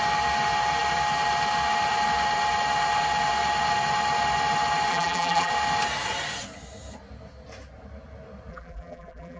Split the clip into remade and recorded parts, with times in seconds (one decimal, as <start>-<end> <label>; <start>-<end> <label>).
0.0-4.9 recorded; 4.9-5.5 remade; 5.5-8.5 recorded; 8.5-9.4 remade